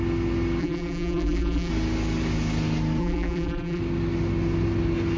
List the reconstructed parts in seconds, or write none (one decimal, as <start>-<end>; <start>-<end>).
0.6-1.7; 3.0-3.8

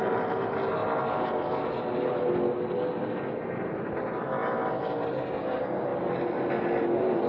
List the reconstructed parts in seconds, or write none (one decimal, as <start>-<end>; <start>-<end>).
none